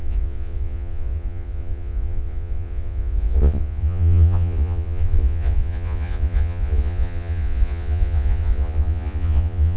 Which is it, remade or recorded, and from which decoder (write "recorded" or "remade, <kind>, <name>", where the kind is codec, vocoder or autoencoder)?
remade, vocoder, Vocos